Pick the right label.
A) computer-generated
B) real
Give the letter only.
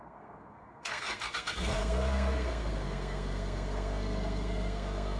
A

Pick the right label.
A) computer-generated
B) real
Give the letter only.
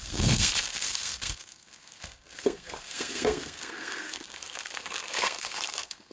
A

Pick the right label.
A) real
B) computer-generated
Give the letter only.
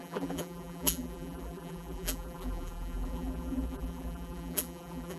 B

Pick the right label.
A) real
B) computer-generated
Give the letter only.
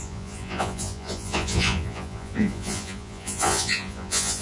B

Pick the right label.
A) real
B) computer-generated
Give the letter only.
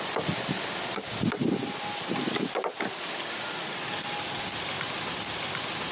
A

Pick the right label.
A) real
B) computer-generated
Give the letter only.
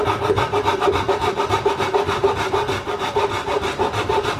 B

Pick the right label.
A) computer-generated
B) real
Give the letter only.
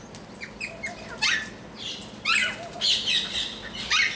B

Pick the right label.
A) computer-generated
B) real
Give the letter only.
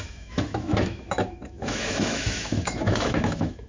A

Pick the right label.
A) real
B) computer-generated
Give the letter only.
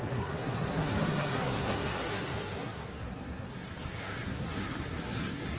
B